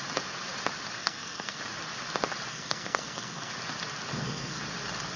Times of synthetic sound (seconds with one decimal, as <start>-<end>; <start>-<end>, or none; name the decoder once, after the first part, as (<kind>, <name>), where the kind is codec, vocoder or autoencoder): 1.0-1.6 (codec, SNAC); 2.5-3.5; 4.1-4.6